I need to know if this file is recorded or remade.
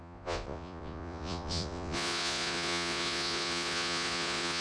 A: remade